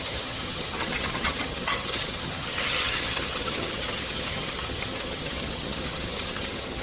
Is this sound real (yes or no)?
no